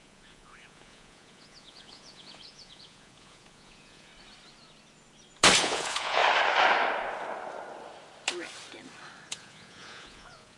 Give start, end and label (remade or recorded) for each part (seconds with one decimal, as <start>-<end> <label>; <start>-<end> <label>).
0.0-4.1 remade; 4.1-5.6 recorded; 5.6-6.2 remade; 6.2-9.3 recorded; 9.3-10.6 remade